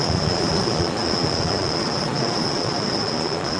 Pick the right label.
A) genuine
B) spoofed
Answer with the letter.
B